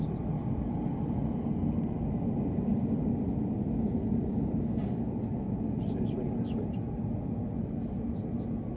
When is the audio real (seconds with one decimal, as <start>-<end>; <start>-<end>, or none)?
0.0-8.8